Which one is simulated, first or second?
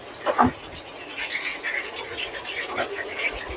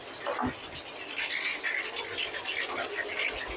first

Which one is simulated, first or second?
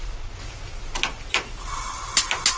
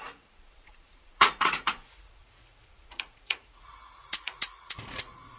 second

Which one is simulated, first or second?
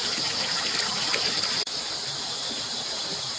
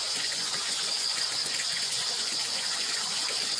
second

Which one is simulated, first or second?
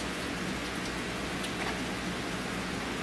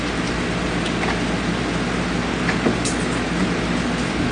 first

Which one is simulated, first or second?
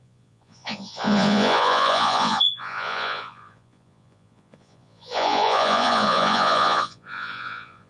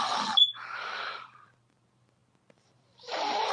first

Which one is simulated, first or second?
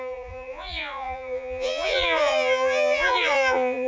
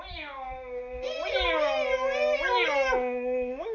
first